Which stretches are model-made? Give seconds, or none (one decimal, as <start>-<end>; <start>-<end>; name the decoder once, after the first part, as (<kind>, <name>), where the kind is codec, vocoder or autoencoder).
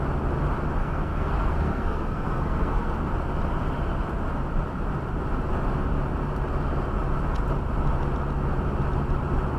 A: 0.8-3.1 (codec, SNAC)